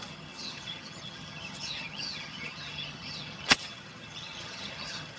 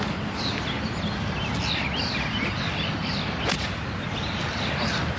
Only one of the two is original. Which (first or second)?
second